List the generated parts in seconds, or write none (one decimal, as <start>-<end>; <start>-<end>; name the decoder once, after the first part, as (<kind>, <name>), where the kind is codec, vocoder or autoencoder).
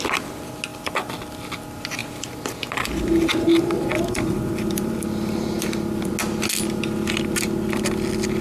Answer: 0.7-1.2 (vocoder, BigVGAN v2); 2.0-6.1